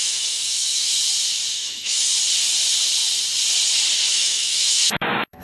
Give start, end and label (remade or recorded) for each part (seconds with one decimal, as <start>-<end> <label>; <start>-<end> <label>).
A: 0.0-0.9 remade; 0.9-1.5 recorded; 1.5-2.1 remade; 2.1-4.1 recorded; 4.1-5.4 remade